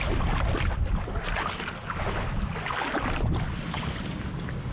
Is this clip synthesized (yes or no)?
no